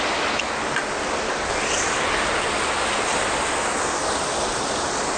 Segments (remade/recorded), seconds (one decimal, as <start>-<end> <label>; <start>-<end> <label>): 0.0-5.2 recorded